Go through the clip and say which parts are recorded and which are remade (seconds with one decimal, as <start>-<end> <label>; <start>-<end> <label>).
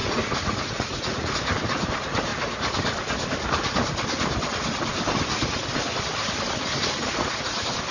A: 0.0-1.3 remade; 1.3-7.9 recorded